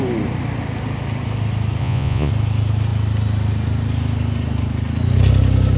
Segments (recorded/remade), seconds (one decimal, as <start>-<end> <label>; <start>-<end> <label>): 0.0-1.8 recorded; 1.8-2.3 remade; 2.3-5.8 recorded